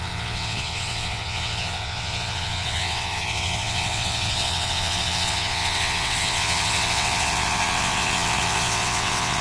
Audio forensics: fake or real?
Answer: fake